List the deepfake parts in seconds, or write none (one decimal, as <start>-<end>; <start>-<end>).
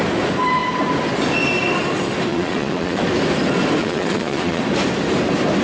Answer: 2.3-3.0; 3.8-4.6